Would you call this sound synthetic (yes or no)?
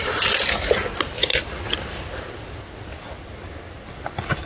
no